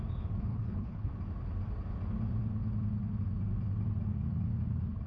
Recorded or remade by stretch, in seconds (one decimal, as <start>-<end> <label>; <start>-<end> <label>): 0.0-0.5 recorded; 0.5-1.1 remade; 1.1-5.1 recorded